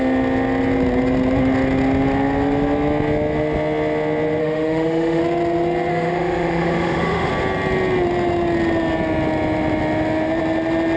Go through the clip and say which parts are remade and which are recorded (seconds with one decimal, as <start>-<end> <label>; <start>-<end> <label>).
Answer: 0.0-4.4 recorded; 4.4-5.2 remade; 5.2-5.9 recorded; 5.9-7.3 remade; 7.3-11.0 recorded